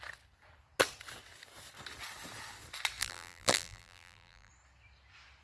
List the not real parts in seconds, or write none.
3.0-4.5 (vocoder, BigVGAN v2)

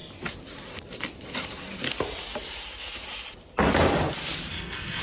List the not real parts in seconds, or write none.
4.5-5.0 (codec, SNAC)

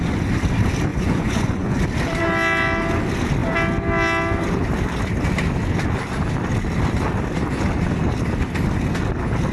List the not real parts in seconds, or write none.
0.9-1.8 (vocoder, Vocos)

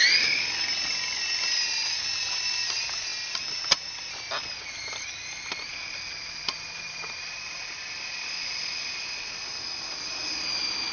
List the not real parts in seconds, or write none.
none

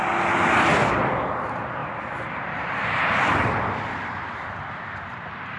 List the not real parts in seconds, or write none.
1.8-5.6 (vocoder, BigVGAN v2)